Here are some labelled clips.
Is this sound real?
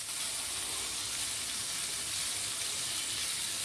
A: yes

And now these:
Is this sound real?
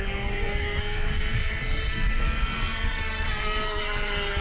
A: no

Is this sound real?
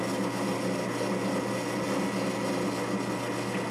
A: yes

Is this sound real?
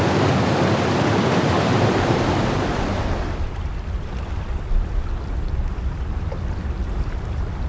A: yes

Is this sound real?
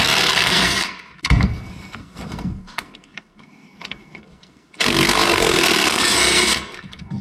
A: no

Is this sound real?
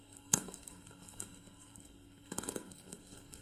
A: no